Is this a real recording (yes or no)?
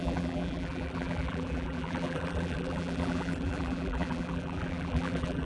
no